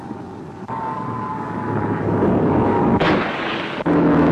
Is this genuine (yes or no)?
no